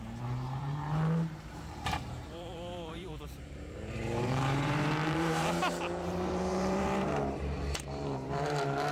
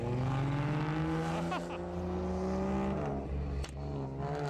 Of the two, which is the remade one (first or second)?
first